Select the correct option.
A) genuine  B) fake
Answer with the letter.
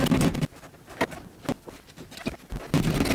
A